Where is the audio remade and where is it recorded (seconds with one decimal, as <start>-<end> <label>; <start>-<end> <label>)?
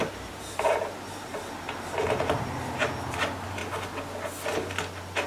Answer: 0.0-1.3 remade; 1.3-3.1 recorded; 3.1-3.6 remade; 3.6-5.3 recorded